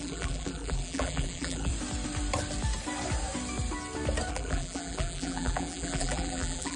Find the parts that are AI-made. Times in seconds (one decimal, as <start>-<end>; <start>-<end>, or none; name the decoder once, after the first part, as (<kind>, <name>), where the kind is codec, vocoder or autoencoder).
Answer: 0.0-1.7 (vocoder, BigVGAN v2); 4.3-6.8